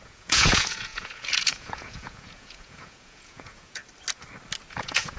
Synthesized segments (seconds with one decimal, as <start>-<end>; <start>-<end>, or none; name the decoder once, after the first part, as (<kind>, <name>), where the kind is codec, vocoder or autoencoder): 0.0-3.8 (vocoder, Vocos); 4.7-5.2